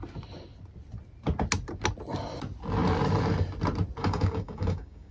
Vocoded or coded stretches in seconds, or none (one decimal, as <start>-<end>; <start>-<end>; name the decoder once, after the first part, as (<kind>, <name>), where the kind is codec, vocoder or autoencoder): 4.0-5.1 (codec, DAC)